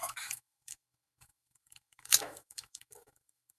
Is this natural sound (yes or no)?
no